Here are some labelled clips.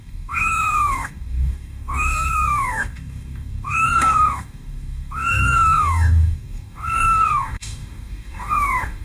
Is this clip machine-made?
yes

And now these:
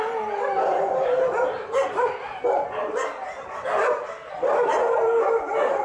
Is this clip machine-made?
no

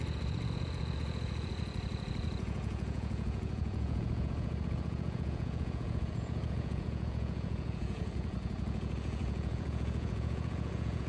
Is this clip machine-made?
yes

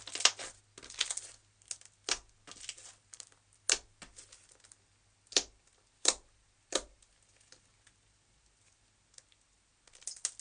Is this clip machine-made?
no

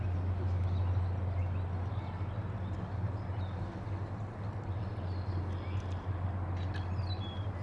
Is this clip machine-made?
no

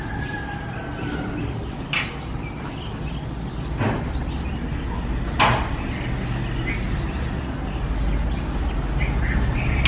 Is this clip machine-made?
no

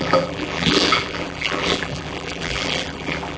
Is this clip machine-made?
yes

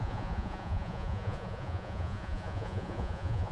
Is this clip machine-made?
yes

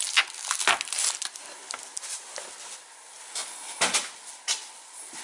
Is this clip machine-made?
no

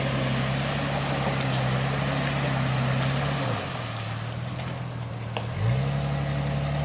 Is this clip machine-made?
no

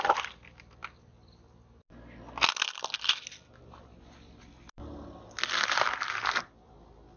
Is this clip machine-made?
no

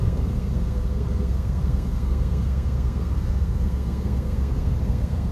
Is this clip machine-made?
yes